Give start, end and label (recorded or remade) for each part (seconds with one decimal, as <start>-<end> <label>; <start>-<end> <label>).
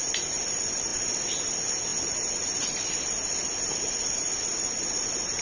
0.0-5.4 recorded